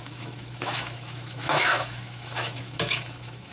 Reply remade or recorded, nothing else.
remade